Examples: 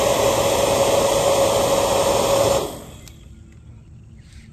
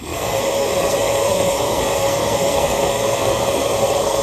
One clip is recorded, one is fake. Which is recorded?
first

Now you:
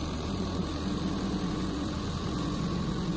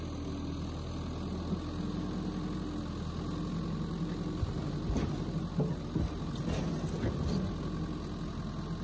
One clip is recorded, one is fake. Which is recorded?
second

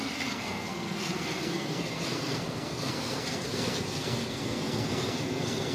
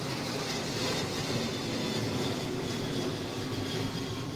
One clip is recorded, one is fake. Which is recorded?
second